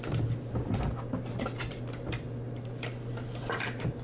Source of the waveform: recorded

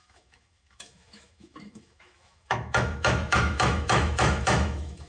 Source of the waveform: remade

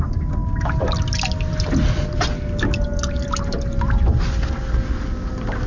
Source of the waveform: recorded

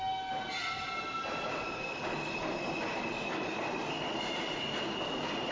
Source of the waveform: recorded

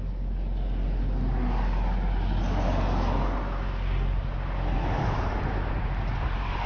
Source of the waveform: recorded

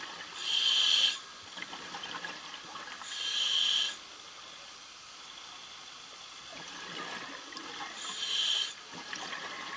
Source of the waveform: recorded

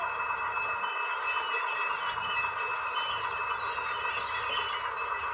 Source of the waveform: recorded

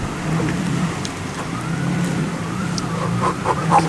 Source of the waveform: remade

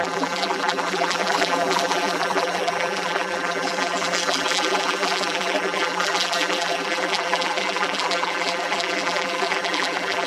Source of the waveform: remade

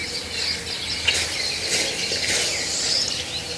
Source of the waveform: recorded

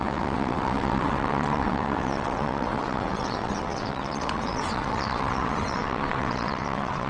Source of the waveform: remade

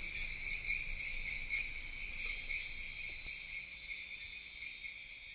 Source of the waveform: recorded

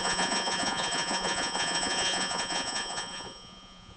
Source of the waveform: remade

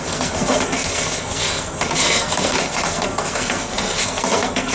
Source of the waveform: remade